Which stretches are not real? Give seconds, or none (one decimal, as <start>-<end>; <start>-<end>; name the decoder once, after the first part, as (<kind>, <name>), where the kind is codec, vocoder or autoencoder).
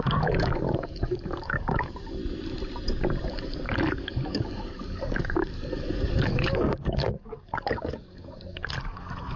0.0-2.2 (codec, DAC); 3.3-9.4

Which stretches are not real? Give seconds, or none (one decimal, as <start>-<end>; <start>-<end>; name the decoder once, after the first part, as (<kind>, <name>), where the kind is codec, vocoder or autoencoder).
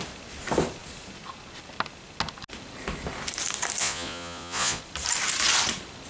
3.8-4.8 (vocoder, Vocos)